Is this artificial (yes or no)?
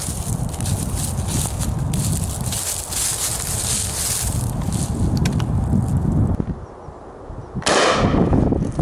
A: no